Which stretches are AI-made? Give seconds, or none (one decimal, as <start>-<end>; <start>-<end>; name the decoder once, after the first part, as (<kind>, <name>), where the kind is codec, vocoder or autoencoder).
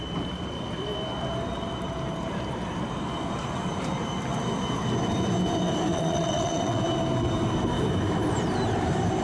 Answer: 5.9-6.8 (vocoder, WaveNeXt)